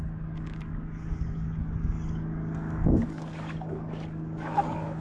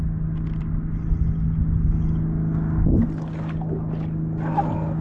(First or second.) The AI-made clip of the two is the first